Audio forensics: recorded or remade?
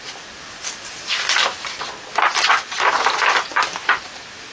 recorded